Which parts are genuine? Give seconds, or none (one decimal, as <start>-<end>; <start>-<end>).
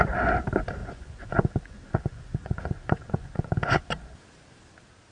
0.0-0.8; 3.9-5.1